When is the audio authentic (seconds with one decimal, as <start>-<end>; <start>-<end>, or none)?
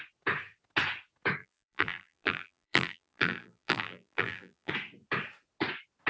0.0-1.4; 4.7-6.1